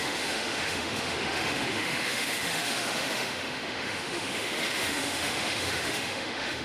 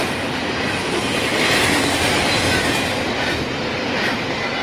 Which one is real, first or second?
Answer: second